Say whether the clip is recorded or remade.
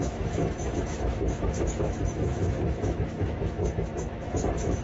remade